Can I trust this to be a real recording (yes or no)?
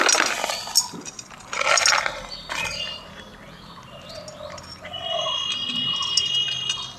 yes